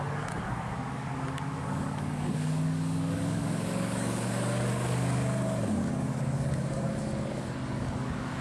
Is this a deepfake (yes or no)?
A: yes